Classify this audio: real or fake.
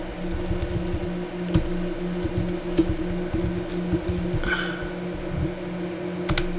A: real